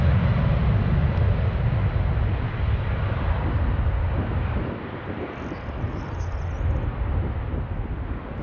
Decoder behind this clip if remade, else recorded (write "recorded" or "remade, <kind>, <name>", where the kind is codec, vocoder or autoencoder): recorded